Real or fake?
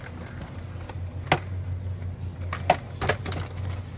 real